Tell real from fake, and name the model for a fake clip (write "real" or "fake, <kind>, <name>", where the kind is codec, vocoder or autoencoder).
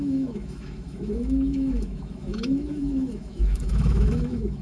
fake, autoencoder, DAC-VAE